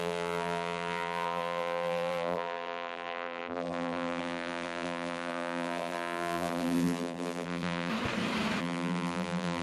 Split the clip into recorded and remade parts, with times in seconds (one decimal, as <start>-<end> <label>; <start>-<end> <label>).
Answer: 0.0-7.9 remade; 7.9-8.6 recorded; 8.6-9.6 remade